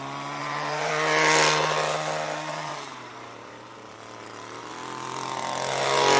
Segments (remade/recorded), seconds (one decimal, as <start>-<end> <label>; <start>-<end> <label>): 0.0-0.4 recorded; 0.4-0.9 remade; 0.9-2.5 recorded; 2.5-3.9 remade; 3.9-6.2 recorded